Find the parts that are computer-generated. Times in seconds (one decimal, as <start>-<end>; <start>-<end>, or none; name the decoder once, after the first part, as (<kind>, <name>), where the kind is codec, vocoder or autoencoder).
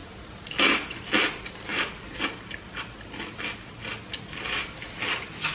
none